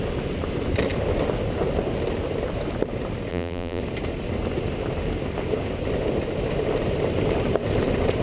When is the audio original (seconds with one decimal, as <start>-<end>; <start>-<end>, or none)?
0.0-3.3; 3.8-8.2